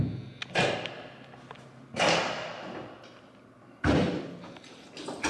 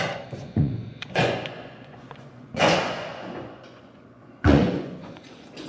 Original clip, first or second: first